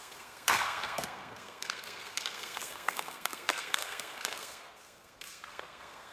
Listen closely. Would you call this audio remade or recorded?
remade